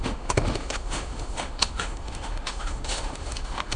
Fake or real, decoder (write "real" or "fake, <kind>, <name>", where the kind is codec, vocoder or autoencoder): fake, autoencoder, DAC-VAE